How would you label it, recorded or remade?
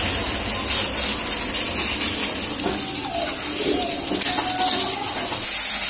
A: recorded